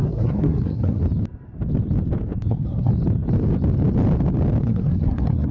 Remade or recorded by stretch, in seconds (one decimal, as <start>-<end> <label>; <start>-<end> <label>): 0.0-1.0 remade; 1.0-2.5 recorded; 2.5-2.9 remade; 2.9-4.6 recorded; 4.6-5.5 remade